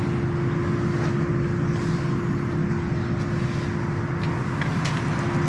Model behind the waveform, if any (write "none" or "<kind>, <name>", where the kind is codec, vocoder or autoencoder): none